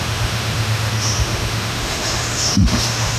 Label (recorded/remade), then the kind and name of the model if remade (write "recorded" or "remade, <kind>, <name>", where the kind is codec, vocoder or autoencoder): remade, autoencoder, DAC-VAE